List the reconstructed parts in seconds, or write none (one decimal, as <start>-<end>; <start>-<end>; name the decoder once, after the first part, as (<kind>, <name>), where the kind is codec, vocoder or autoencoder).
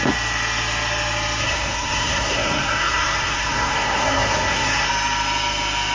1.4-4.9 (codec, SNAC)